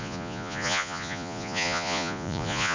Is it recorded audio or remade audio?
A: remade